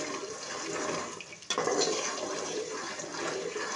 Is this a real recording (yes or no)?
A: yes